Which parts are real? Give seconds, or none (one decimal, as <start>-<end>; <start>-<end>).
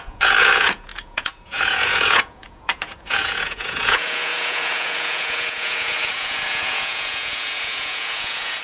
none